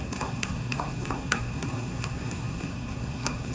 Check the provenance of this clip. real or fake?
fake